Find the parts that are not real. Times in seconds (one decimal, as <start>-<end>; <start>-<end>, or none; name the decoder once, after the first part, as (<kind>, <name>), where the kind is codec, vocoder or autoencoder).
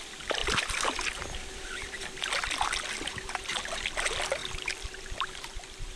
0.0-6.0 (vocoder, BigVGAN v2)